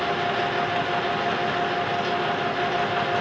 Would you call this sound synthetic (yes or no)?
no